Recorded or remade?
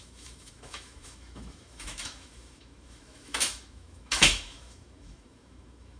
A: remade